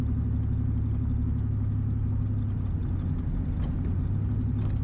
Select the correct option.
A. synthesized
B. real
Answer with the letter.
B